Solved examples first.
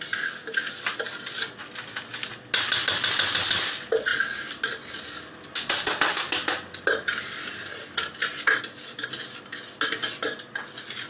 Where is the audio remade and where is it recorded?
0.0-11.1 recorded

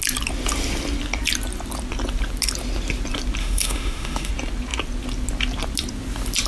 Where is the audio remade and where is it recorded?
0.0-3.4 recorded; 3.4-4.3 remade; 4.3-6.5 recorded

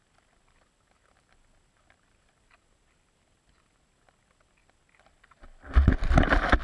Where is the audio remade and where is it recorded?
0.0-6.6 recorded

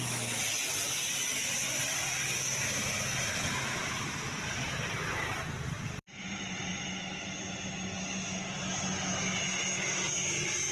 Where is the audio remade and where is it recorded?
0.0-3.8 recorded; 3.8-6.7 remade; 6.7-10.7 recorded

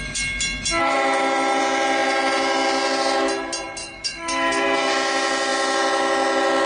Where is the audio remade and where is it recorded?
0.0-0.8 recorded; 0.8-1.6 remade; 1.6-3.8 recorded; 3.8-4.9 remade; 4.9-6.7 recorded

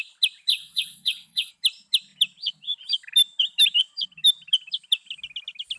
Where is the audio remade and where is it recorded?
0.0-0.5 recorded; 0.5-1.5 remade; 1.5-5.8 recorded